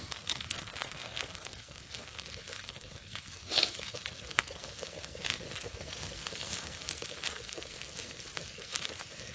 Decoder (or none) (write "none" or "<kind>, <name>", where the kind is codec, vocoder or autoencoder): codec, SNAC